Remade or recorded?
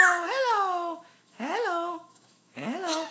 remade